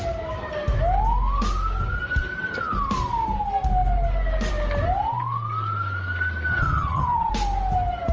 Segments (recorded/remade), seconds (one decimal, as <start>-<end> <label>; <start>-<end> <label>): 0.0-6.5 recorded; 6.5-7.3 remade; 7.3-8.1 recorded